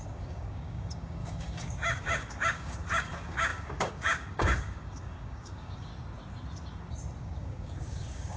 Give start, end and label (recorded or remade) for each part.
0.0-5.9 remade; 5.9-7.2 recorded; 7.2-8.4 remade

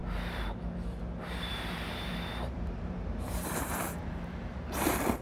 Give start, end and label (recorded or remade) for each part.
0.0-1.5 recorded; 1.5-5.2 remade